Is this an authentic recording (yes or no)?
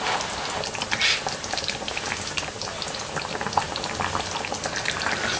yes